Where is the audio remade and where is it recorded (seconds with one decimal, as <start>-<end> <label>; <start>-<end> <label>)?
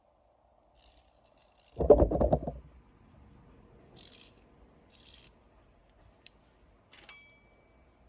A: 0.0-8.1 recorded